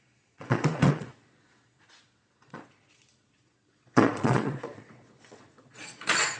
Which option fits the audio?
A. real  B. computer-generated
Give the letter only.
B